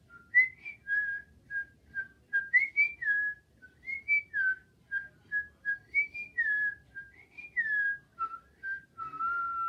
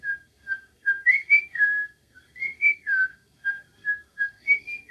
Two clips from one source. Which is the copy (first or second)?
second